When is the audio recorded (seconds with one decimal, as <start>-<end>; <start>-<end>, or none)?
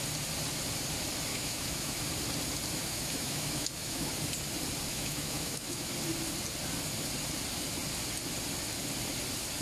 0.0-1.3; 2.0-2.8; 4.1-4.9; 5.9-9.6